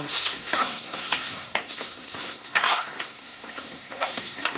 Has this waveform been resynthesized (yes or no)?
yes